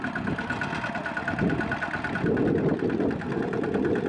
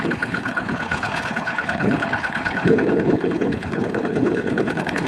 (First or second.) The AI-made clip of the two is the second